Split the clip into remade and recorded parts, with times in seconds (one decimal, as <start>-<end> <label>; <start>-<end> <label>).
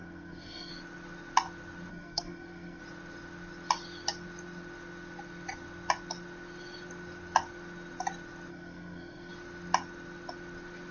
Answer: 0.0-0.7 remade; 0.7-1.9 recorded; 1.9-2.8 remade; 2.8-8.5 recorded; 8.5-9.3 remade; 9.3-10.9 recorded